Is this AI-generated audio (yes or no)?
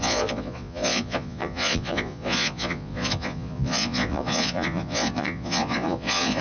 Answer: yes